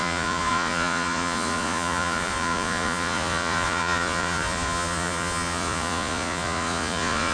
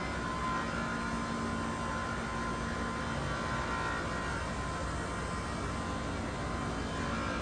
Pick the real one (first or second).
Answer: second